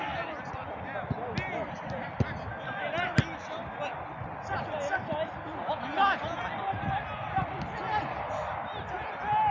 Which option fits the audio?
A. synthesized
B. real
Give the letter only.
B